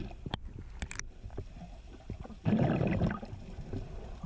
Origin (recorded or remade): recorded